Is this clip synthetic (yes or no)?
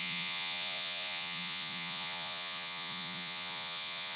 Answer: yes